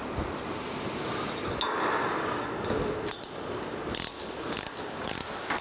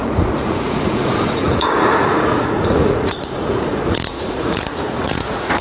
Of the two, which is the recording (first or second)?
first